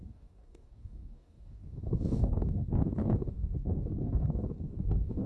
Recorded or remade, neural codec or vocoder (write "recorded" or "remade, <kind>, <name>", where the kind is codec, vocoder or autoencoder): remade, codec, DAC